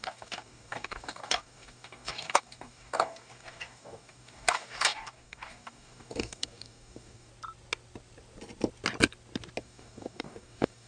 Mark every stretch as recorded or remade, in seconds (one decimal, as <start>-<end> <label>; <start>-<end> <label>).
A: 0.0-7.3 remade; 7.3-9.6 recorded; 9.6-10.9 remade